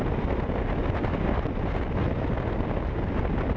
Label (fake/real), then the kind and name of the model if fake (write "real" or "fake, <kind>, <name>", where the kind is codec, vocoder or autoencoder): real